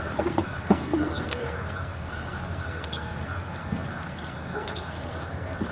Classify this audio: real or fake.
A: fake